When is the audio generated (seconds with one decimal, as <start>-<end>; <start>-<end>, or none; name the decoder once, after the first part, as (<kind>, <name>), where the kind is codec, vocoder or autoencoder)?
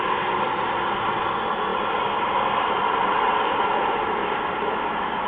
1.7-4.8 (vocoder, BigVGAN v2)